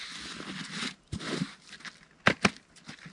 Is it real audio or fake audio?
real